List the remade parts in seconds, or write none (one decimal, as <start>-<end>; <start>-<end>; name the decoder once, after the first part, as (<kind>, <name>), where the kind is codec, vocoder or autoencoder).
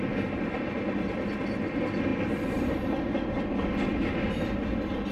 none